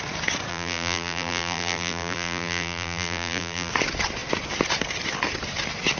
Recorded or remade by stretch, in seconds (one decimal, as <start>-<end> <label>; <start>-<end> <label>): 0.0-0.5 recorded; 0.5-3.7 remade; 3.7-6.0 recorded